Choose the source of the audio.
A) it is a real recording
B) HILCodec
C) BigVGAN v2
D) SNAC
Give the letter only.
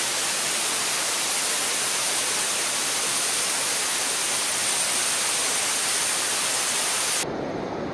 A